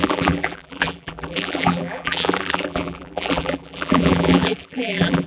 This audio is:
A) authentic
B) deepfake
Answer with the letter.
B